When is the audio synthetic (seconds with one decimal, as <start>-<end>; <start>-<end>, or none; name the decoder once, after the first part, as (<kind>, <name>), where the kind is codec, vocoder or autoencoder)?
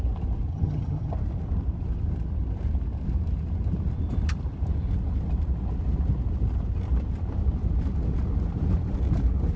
0.5-1.1 (vocoder, HiFi-GAN)